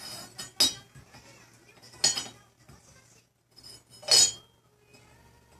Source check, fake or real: real